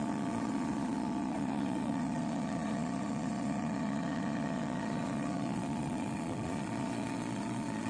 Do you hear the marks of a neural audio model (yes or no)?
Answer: yes